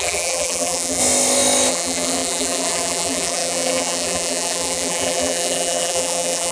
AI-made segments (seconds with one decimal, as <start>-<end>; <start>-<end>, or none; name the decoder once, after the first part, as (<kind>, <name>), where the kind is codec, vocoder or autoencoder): 0.0-1.0 (vocoder, BigVGAN v2); 1.7-6.5